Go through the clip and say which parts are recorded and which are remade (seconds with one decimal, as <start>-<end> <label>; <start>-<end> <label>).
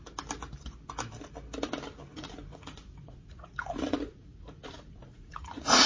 0.0-2.1 recorded; 2.1-5.9 remade